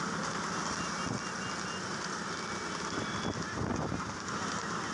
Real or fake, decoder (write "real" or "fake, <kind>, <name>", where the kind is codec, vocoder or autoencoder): real